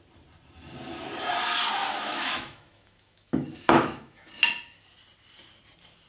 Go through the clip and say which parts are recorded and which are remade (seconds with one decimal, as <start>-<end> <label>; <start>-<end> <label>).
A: 0.0-1.8 recorded; 1.8-4.3 remade; 4.3-6.1 recorded